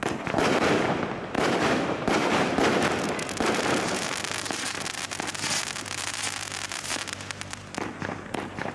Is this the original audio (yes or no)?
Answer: yes